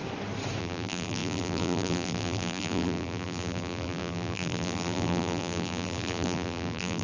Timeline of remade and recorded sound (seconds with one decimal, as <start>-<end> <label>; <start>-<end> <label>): 0.0-0.6 recorded; 0.6-7.0 remade